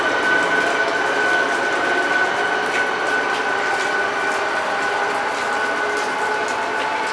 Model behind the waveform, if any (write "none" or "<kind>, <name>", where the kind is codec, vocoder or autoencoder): none